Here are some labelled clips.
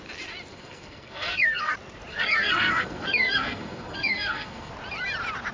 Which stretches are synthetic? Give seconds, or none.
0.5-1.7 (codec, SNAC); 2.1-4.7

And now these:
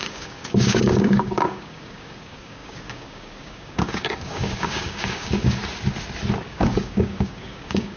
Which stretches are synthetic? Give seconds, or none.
0.0-5.6 (codec, DAC); 6.5-8.0

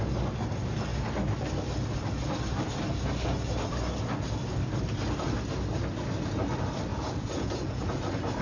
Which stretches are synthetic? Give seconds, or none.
6.9-8.0 (vocoder, Vocos)

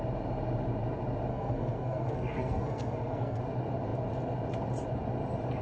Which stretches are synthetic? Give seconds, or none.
1.3-3.4 (codec, SNAC)

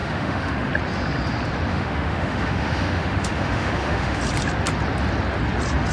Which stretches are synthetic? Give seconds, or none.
0.0-0.7 (autoencoder, DAC-VAE); 1.7-4.2

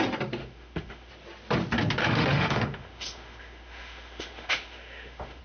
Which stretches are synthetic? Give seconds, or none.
0.4-1.1 (autoencoder, DAC-VAE); 2.0-5.4

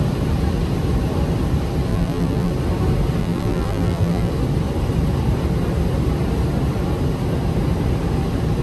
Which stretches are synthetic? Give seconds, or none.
1.9-2.5 (vocoder, BigVGAN v2); 3.2-4.3

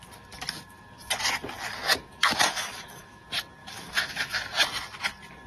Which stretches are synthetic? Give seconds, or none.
2.2-3.2 (autoencoder, DAC-VAE); 3.6-4.4